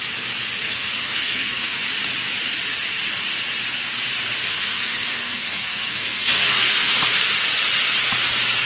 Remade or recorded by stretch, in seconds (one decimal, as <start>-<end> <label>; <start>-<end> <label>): 0.0-0.6 recorded; 0.6-1.8 remade; 1.8-4.5 recorded; 4.5-6.9 remade; 6.9-8.7 recorded